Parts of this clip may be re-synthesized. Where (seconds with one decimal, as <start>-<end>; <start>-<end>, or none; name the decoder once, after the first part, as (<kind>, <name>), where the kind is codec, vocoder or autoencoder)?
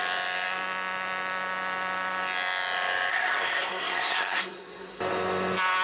3.1-5.0 (codec, SNAC)